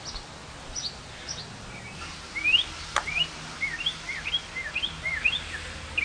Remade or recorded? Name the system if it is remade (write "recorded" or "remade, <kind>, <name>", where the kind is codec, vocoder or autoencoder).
recorded